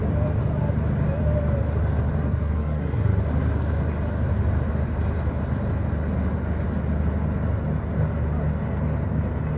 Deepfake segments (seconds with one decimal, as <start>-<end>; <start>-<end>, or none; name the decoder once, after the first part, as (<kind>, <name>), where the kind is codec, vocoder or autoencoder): 2.2-3.2 (codec, SNAC)

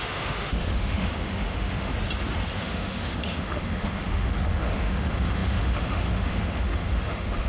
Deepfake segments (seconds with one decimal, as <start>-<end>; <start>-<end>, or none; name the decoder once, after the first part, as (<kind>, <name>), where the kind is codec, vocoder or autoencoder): 0.0-1.9 (autoencoder, DAC-VAE); 2.5-7.5

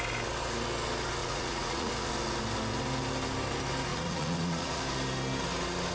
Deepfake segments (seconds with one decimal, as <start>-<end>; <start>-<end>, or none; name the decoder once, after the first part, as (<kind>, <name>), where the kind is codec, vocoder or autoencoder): 1.2-1.9 (vocoder, Vocos); 3.9-4.8